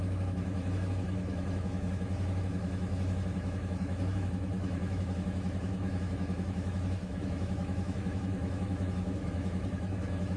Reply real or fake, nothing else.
fake